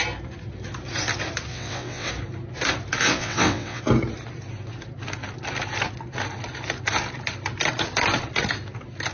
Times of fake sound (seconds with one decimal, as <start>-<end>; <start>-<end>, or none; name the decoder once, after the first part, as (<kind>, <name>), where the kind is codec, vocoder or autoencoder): 1.5-2.1 (vocoder, WaveNeXt); 3.0-3.8